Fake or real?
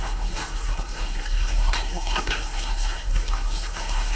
fake